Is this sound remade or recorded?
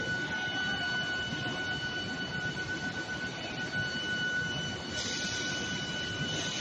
remade